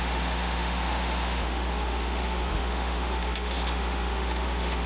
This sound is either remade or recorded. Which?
remade